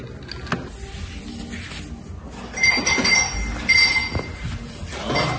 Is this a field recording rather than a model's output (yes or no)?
yes